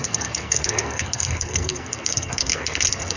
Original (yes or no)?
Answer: no